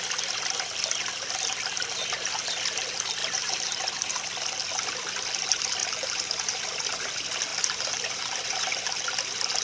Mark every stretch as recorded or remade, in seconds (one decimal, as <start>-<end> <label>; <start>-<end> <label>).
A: 0.0-3.2 recorded; 3.2-3.8 remade; 3.8-5.8 recorded; 5.8-6.4 remade; 6.4-7.5 recorded; 7.5-8.6 remade; 8.6-9.6 recorded